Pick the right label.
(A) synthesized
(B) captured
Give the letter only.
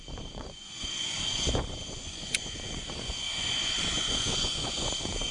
A